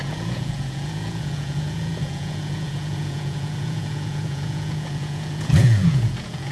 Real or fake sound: fake